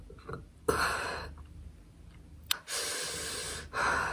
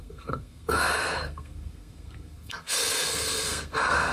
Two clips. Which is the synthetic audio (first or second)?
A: second